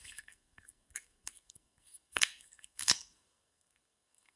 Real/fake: fake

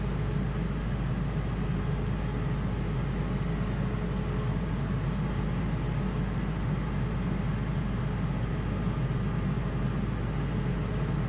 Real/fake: real